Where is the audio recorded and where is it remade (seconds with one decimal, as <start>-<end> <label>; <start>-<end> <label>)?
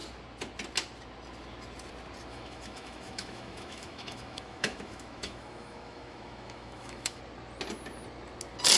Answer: 0.0-2.3 recorded; 2.3-7.2 remade; 7.2-8.8 recorded